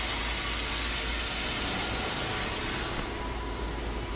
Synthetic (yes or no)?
no